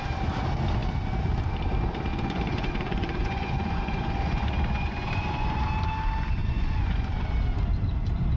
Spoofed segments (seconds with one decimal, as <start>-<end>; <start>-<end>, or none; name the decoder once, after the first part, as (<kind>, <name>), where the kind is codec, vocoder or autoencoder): 2.1-5.6 (vocoder, Vocos); 6.4-7.3